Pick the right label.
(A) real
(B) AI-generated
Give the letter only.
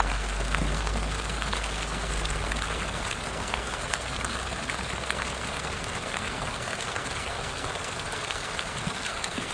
B